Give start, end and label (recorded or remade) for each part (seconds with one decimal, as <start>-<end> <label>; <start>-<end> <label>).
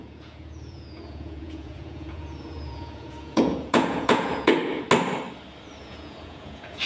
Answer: 0.0-4.6 remade; 4.6-5.8 recorded; 5.8-6.9 remade